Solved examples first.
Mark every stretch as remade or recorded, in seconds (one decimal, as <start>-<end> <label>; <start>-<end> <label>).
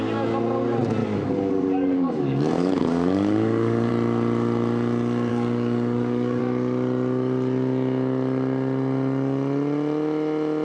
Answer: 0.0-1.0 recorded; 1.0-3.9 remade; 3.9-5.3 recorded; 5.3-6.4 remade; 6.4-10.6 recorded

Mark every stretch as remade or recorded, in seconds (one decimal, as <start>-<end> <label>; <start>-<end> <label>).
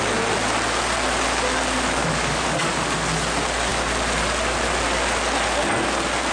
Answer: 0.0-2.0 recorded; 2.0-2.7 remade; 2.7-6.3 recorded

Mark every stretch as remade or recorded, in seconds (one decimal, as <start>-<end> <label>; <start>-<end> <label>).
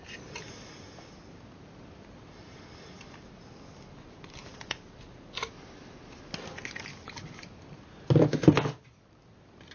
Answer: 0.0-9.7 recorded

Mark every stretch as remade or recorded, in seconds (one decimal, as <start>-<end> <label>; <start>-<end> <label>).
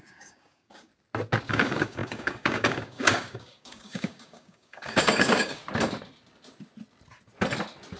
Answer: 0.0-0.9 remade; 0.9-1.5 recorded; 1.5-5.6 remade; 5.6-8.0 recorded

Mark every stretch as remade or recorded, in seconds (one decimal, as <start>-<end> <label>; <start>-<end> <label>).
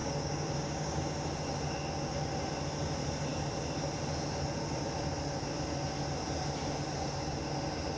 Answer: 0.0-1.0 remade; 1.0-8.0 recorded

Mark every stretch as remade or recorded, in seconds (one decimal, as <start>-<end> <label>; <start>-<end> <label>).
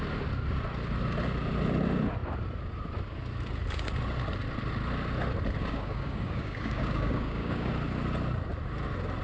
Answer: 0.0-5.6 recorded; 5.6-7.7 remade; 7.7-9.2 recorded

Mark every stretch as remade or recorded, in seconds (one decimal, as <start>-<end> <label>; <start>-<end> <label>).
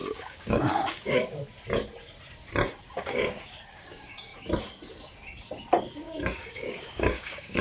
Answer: 0.0-1.4 remade; 1.4-2.9 recorded; 2.9-4.3 remade; 4.3-5.8 recorded; 5.8-7.6 remade